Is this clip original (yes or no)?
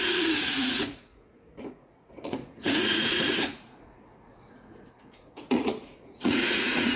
no